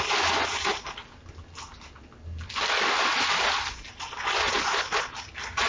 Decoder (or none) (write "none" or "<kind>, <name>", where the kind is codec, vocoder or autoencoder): none